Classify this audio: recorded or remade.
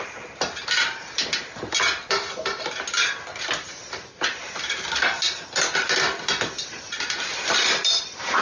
recorded